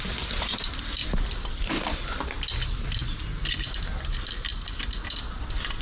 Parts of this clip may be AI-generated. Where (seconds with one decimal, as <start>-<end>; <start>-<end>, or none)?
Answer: none